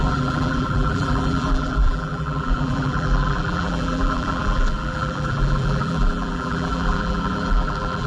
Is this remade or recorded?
remade